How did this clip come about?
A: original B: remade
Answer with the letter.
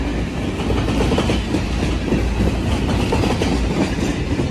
A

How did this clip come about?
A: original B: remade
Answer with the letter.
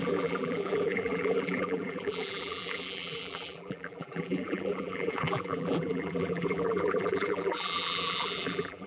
B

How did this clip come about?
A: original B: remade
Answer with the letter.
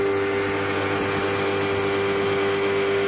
A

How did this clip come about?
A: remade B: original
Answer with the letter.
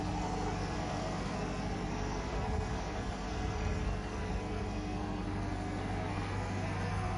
A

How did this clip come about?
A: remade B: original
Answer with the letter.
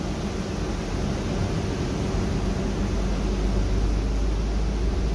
B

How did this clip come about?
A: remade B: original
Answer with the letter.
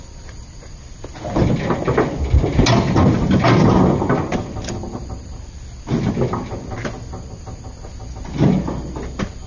B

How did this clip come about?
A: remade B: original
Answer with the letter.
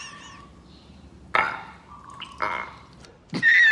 B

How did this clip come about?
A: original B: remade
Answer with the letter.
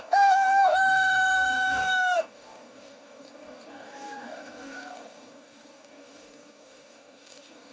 B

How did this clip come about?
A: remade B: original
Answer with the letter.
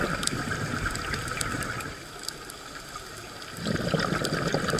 B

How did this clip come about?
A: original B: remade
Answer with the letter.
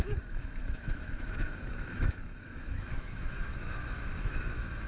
B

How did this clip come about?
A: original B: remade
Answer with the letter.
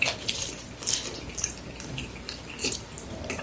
A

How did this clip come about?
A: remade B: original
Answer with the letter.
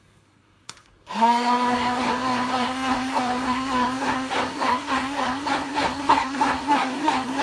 A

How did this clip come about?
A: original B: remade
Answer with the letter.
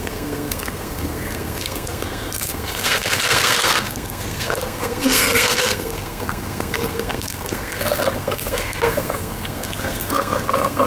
B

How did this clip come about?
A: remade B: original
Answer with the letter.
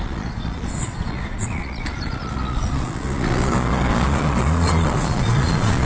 A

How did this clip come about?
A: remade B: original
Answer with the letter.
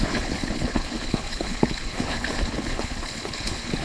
A